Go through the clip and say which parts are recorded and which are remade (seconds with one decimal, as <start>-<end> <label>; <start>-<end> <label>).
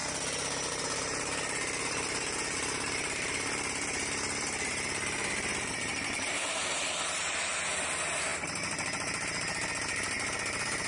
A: 0.0-0.7 recorded; 0.7-8.3 remade; 8.3-10.9 recorded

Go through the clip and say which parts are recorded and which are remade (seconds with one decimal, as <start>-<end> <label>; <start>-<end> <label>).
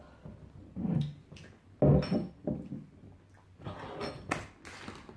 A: 0.0-5.2 recorded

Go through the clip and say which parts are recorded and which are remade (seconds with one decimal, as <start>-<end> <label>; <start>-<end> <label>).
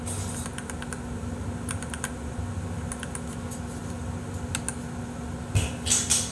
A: 0.0-6.3 recorded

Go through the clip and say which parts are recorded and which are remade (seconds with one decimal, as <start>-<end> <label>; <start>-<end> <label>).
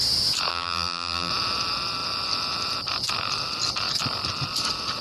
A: 0.0-0.5 recorded; 0.5-1.3 remade; 1.3-5.0 recorded